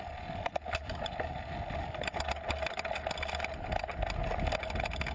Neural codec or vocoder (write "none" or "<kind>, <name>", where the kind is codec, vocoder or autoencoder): none